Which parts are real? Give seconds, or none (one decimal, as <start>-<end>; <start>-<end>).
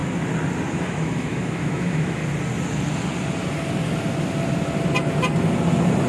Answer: 0.0-0.7; 2.2-6.1